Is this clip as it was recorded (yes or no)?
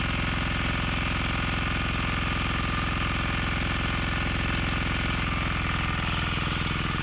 yes